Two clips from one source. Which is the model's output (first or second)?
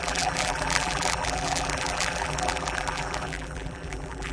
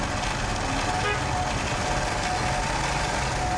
first